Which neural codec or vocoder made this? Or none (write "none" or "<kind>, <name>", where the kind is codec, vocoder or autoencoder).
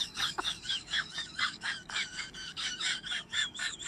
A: codec, DAC